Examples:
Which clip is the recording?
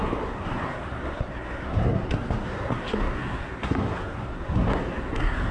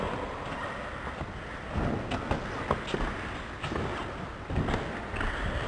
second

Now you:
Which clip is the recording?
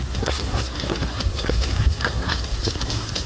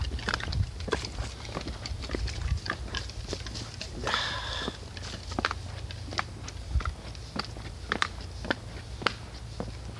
second